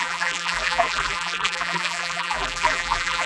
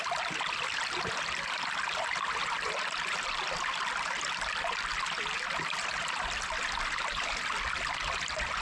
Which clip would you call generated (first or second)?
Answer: first